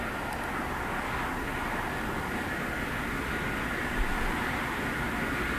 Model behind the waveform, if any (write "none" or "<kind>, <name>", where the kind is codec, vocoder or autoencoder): none